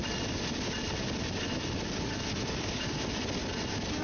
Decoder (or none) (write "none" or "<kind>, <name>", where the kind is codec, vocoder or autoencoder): none